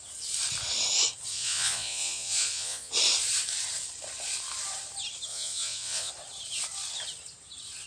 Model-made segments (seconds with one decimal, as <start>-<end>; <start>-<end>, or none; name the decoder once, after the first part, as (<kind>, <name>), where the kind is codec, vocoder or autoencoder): 1.3-2.9 (vocoder, Vocos); 5.3-6.1